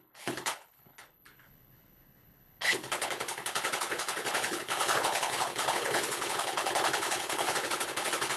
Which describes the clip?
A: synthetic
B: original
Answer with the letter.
A